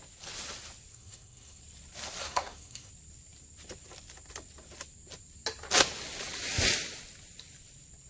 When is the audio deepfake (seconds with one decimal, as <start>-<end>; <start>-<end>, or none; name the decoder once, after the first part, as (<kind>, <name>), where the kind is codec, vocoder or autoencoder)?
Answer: 0.9-1.6 (codec, SNAC); 2.2-2.9